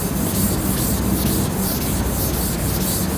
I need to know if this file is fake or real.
real